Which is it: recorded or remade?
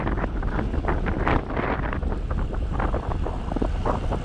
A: recorded